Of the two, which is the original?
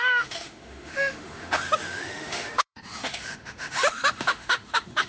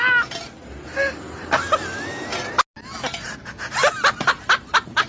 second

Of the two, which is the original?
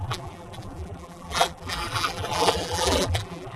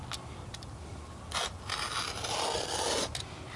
second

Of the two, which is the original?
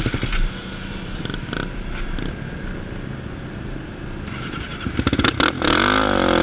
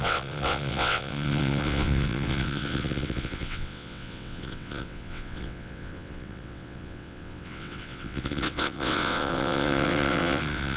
first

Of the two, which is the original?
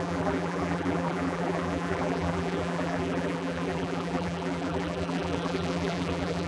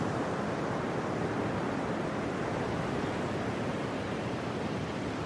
second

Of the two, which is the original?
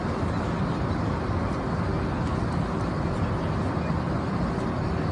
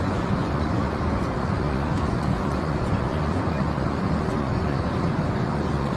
first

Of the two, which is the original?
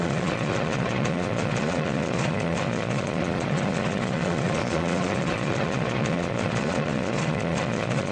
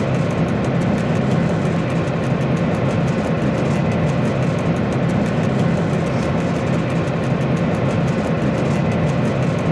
second